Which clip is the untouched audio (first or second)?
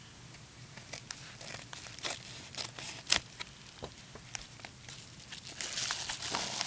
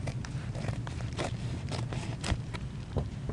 first